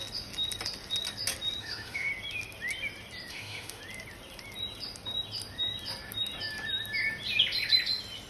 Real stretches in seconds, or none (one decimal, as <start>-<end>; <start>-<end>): 0.0-1.6; 2.1-3.3; 3.8-8.3